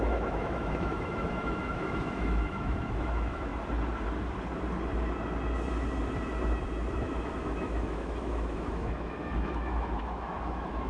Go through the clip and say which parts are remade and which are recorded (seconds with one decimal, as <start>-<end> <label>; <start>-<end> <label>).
0.0-3.5 remade; 3.5-6.9 recorded; 6.9-10.9 remade